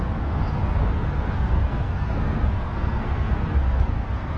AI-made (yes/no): yes